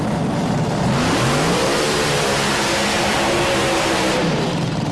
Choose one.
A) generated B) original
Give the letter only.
A